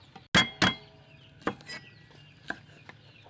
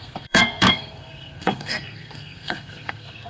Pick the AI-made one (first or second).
second